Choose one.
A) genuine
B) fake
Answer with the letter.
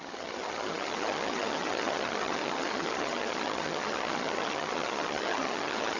B